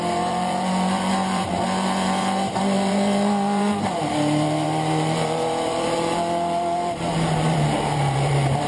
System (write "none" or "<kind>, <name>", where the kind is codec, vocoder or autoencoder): vocoder, BigVGAN v2